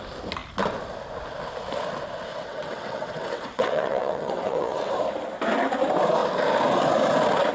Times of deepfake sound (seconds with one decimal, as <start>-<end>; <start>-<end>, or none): 2.3-4.9